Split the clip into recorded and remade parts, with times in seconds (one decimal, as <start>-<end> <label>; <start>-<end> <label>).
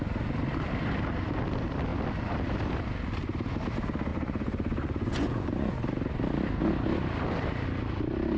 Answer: 0.0-4.1 recorded; 4.1-5.7 remade; 5.7-8.4 recorded